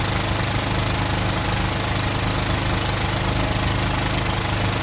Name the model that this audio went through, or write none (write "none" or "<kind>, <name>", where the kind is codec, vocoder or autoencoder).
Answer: none